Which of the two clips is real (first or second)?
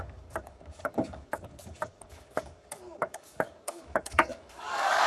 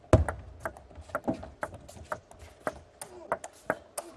second